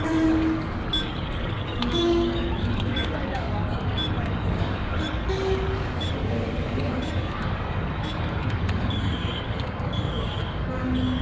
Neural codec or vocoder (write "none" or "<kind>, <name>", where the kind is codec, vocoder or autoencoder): codec, DAC